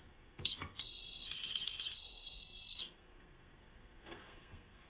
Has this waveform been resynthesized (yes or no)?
yes